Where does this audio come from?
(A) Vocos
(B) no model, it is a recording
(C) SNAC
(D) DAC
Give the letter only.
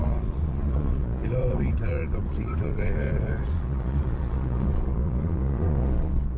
A